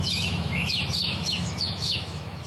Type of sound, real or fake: fake